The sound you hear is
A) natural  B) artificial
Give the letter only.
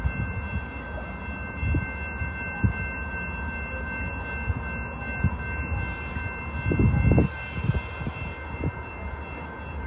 A